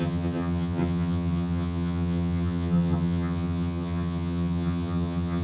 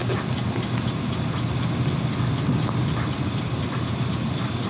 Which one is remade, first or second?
first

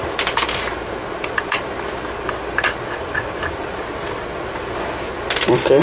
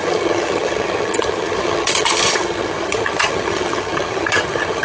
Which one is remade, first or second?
second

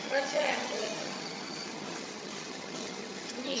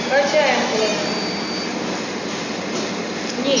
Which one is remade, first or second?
first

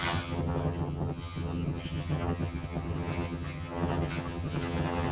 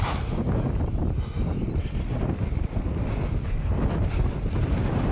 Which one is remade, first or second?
first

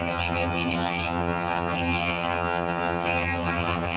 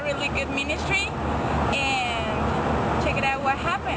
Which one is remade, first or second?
first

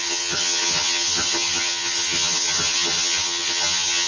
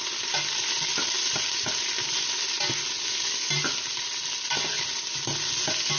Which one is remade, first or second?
first